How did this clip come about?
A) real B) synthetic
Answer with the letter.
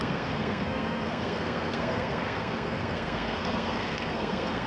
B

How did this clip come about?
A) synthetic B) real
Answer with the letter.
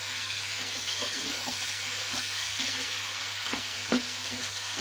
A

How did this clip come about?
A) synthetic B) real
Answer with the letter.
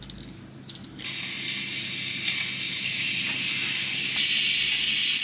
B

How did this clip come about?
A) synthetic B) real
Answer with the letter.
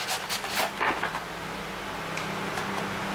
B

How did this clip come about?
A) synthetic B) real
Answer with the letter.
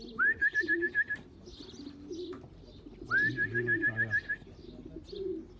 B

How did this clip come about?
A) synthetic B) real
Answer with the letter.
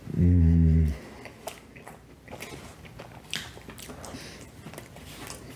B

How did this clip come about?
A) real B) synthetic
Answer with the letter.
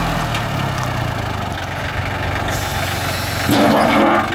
A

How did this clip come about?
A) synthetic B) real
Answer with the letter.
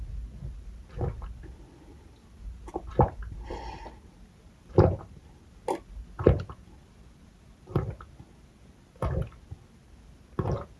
B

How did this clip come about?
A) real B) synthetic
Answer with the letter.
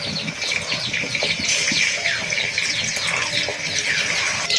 A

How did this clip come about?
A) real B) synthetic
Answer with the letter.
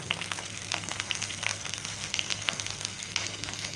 B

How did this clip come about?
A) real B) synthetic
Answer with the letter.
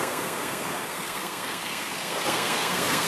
B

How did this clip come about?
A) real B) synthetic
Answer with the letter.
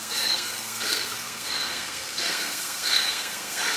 B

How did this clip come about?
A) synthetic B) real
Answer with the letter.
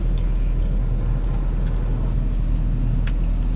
B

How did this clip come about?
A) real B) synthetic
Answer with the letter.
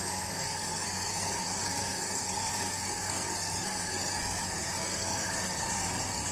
B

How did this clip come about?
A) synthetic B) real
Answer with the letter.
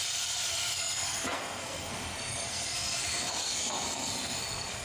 A